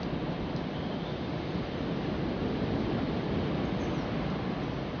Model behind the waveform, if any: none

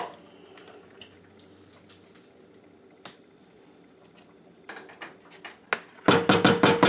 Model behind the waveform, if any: none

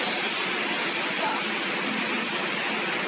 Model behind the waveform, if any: none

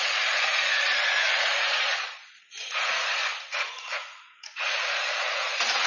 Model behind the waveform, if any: vocoder, Vocos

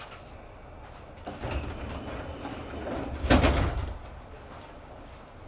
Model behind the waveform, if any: none